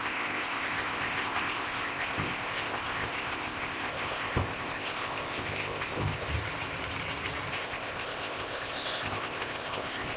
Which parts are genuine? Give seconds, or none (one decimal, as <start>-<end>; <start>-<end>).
6.3-7.5